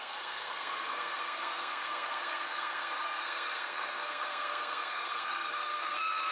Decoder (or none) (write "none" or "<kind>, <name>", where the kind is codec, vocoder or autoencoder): codec, SNAC